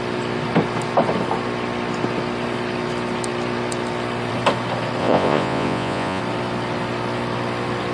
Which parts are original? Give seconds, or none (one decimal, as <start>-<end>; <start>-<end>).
0.0-5.0; 6.2-7.9